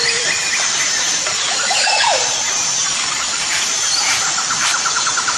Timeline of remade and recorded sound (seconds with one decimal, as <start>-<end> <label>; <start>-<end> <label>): 0.0-5.4 remade

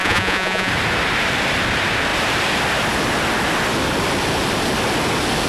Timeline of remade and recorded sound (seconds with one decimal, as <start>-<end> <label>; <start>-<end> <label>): 0.0-0.7 remade; 0.7-5.5 recorded

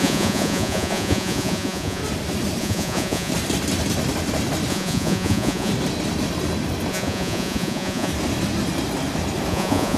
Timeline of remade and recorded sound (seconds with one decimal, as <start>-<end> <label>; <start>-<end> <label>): 0.0-2.0 remade; 2.0-2.6 recorded; 2.6-3.3 remade; 3.3-4.7 recorded; 4.7-5.7 remade; 5.7-6.9 recorded; 6.9-8.1 remade; 8.1-9.5 recorded; 9.5-10.0 remade

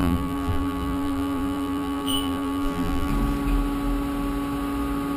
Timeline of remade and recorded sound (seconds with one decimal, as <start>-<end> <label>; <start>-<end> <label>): 0.0-3.1 remade; 3.1-5.2 recorded

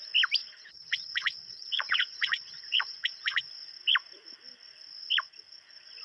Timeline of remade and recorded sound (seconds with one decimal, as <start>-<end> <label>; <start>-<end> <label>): 0.0-0.4 recorded; 0.4-3.4 remade; 3.4-6.0 recorded

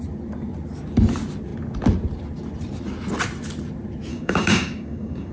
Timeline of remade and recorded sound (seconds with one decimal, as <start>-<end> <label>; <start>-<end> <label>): 0.0-4.1 recorded; 4.1-5.3 remade